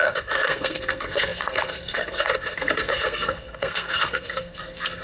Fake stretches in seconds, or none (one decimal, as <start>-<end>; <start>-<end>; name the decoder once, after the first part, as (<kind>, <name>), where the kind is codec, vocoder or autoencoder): 0.0-5.0 (codec, SNAC)